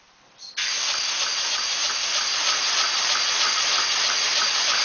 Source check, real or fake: real